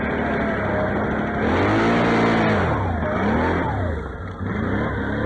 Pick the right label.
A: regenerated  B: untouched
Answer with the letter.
B